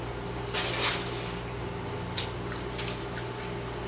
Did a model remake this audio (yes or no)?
no